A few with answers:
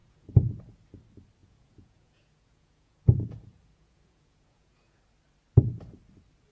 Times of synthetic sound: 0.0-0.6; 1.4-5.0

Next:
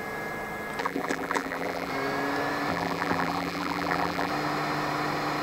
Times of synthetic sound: 0.8-1.9; 2.7-4.3

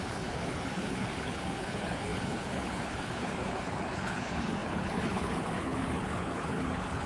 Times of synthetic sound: 0.0-7.1

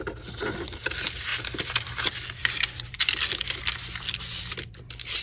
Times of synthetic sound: none

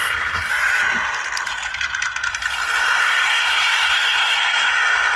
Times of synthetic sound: 0.0-0.5; 2.8-4.7